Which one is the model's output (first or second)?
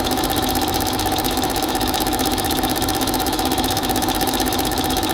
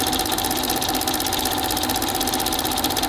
first